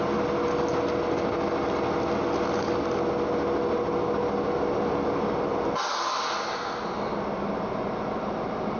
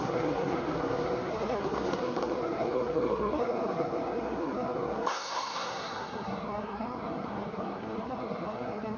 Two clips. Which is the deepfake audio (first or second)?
second